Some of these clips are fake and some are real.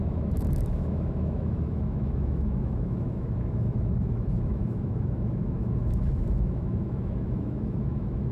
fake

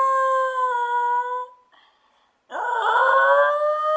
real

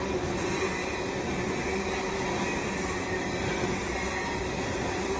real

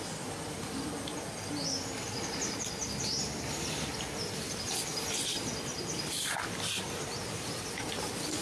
real